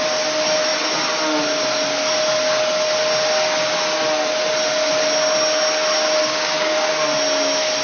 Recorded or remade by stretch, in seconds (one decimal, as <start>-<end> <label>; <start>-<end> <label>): 0.0-6.2 recorded; 6.2-6.9 remade; 6.9-7.8 recorded